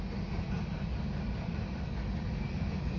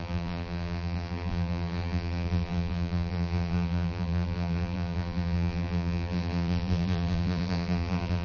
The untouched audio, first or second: first